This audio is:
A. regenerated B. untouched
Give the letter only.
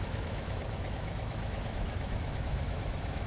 A